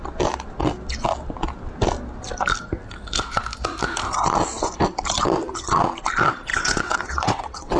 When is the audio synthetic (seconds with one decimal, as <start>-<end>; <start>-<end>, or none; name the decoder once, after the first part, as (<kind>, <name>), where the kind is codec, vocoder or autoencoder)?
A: 6.5-7.8 (vocoder, WaveNeXt)